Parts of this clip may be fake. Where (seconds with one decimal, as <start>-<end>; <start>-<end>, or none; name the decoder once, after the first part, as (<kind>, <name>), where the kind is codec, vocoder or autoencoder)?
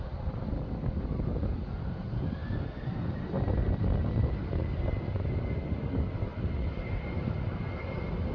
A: none